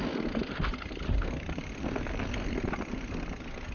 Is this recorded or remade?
recorded